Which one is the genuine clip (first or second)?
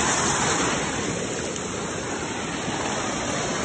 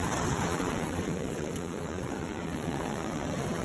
first